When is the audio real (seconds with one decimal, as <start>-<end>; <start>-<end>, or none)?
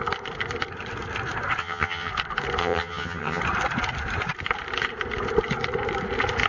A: 0.0-1.6; 2.1-2.6; 3.4-6.5